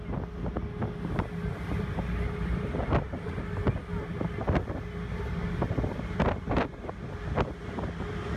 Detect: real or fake real